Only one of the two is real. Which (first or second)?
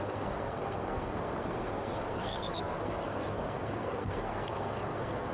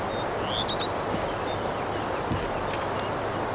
second